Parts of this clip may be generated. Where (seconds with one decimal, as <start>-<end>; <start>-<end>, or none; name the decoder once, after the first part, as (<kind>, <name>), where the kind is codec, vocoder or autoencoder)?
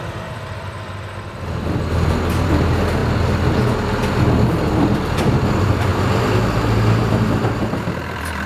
0.0-3.0 (vocoder, BigVGAN v2); 4.1-5.9; 7.0-8.5